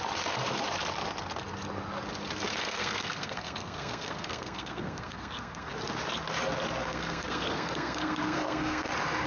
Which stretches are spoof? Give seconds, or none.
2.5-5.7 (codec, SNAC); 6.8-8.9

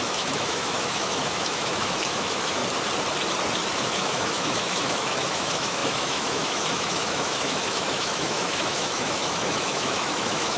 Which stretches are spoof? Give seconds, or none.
0.0-2.6 (autoencoder, DAC-VAE); 3.7-10.6

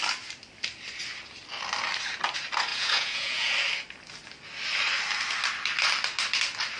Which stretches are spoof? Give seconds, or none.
2.7-3.5 (vocoder, Vocos)

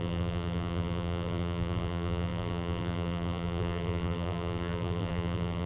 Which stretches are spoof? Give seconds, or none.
0.0-5.7 (vocoder, BigVGAN v2)

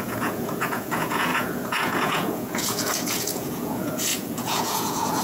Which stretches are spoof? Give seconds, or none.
0.0-5.2 (vocoder, Vocos)